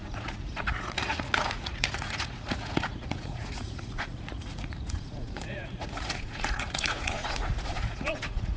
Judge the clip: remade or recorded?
remade